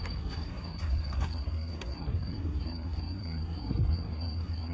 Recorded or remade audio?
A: remade